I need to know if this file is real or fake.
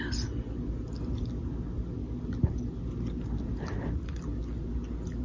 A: real